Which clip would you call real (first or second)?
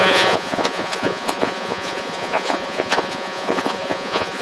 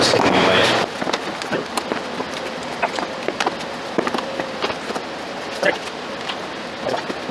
second